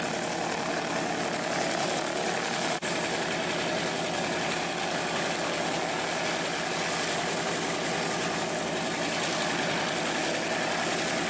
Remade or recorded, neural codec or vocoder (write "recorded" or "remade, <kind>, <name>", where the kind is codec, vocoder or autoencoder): recorded